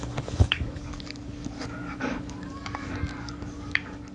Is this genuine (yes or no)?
no